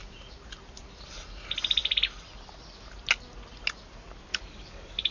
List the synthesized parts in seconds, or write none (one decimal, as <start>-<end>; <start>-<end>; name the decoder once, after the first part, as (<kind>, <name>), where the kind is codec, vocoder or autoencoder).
4.3-5.1 (codec, DAC)